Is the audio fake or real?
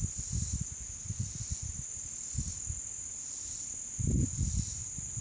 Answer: real